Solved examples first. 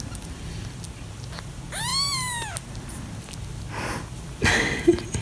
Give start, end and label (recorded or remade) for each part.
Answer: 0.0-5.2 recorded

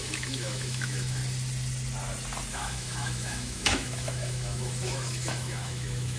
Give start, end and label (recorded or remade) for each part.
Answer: 0.0-1.2 remade; 1.2-2.5 recorded; 2.5-6.2 remade

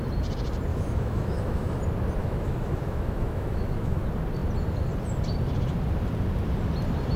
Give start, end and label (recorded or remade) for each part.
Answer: 0.0-0.7 recorded; 0.7-1.8 remade; 1.8-2.2 recorded; 2.2-4.0 remade; 4.0-7.2 recorded

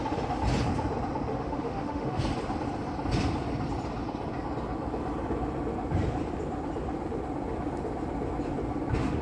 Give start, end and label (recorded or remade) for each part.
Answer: 0.0-1.3 recorded; 1.3-2.2 remade; 2.2-9.2 recorded